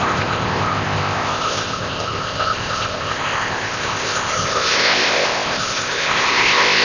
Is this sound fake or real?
fake